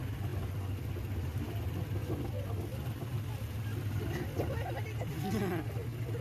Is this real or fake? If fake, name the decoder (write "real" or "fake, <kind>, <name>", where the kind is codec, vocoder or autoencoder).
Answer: real